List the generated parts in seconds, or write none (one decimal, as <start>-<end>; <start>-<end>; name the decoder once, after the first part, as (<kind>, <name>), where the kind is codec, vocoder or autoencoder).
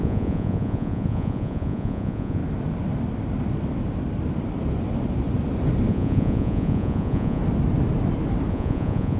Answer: 0.0-2.4 (vocoder, Vocos); 5.9-7.4; 8.5-9.2